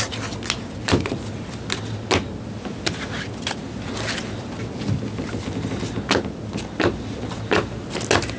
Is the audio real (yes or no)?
yes